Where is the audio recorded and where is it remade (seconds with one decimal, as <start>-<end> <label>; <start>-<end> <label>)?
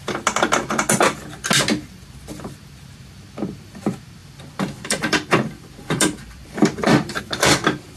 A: 0.0-4.2 recorded; 4.2-7.2 remade; 7.2-8.0 recorded